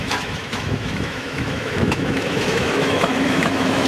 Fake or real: fake